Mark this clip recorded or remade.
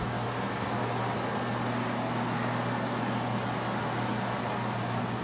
recorded